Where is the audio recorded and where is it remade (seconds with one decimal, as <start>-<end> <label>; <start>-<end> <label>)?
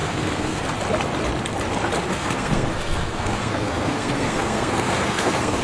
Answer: 0.0-0.6 remade; 0.6-2.1 recorded; 2.1-5.6 remade